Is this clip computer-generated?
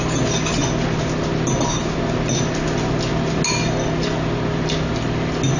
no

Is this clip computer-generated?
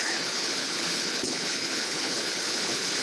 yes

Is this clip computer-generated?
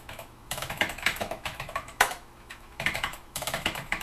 yes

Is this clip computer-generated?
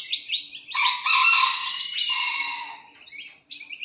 no